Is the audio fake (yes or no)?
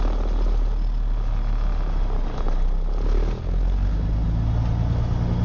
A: no